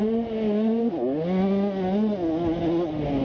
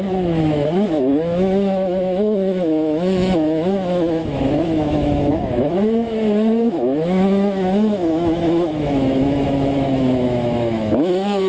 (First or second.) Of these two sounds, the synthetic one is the second